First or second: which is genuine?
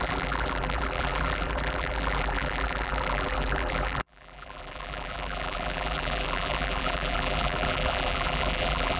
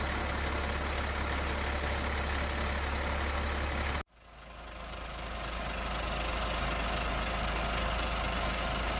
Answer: second